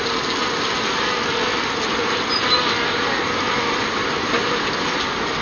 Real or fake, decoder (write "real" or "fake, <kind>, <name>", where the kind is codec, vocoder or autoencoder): real